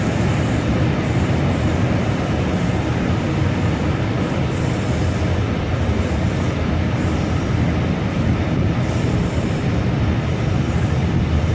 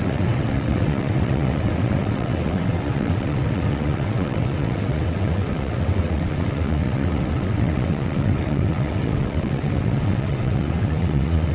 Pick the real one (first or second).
first